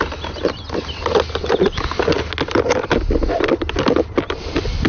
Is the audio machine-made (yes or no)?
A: no